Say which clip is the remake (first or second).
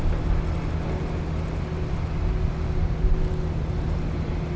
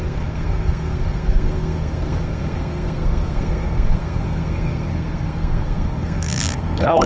second